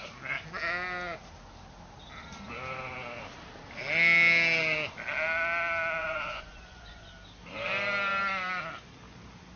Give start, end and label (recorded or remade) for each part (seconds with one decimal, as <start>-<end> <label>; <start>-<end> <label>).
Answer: 0.0-6.0 recorded; 6.0-7.1 remade; 7.1-9.6 recorded